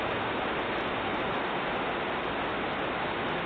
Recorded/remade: recorded